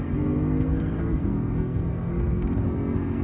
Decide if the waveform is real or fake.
fake